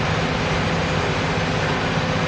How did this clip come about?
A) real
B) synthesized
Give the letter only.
A